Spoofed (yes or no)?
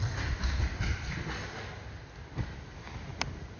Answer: no